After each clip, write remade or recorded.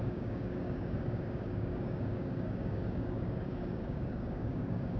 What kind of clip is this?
remade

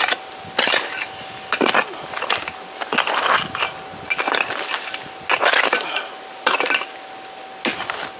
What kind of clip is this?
recorded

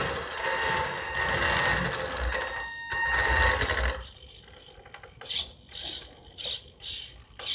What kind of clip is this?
recorded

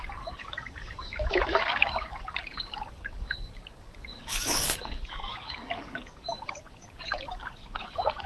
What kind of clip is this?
remade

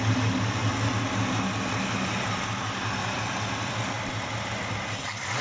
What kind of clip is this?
recorded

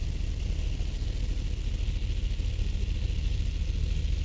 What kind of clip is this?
recorded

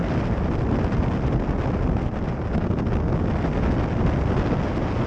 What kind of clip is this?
recorded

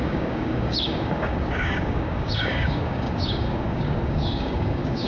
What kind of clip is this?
remade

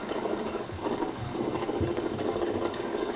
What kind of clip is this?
remade